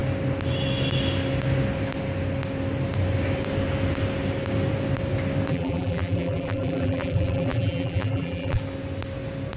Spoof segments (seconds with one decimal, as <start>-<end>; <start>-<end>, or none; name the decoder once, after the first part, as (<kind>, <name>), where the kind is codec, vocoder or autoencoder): 5.5-8.6 (vocoder, BigVGAN v2)